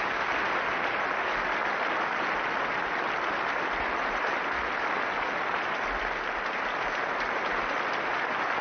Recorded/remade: recorded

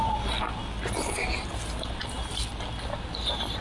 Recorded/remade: recorded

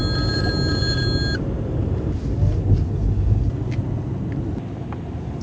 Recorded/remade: recorded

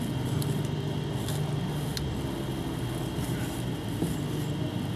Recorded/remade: recorded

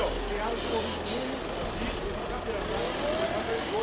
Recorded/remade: recorded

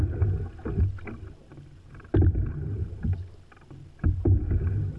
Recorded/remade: recorded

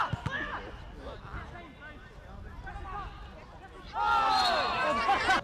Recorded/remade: recorded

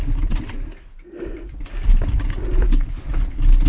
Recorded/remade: recorded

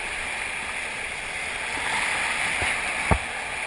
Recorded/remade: recorded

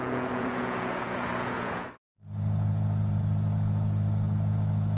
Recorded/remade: remade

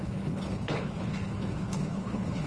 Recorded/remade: remade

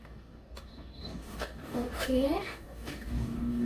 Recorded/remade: remade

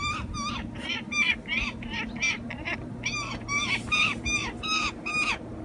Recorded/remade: remade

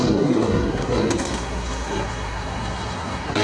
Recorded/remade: remade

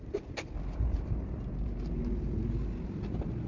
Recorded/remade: recorded